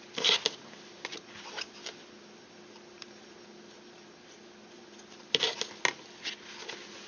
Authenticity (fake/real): real